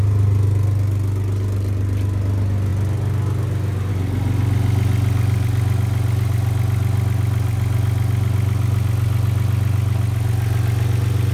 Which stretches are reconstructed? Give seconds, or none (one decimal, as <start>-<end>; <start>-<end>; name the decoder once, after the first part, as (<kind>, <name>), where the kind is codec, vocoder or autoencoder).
none